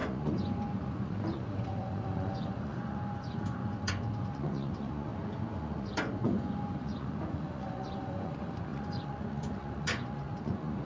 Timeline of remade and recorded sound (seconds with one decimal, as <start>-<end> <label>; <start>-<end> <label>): 0.0-10.8 remade